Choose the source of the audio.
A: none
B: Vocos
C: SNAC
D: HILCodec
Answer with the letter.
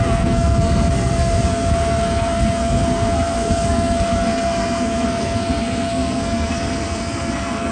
C